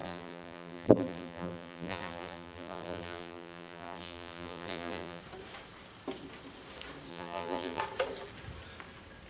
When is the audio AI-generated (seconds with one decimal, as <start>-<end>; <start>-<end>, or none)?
0.0-5.2; 7.1-7.8